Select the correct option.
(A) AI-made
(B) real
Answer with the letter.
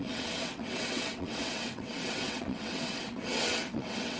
A